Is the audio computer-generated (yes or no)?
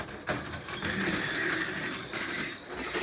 no